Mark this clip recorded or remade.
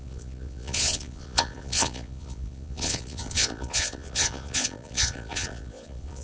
remade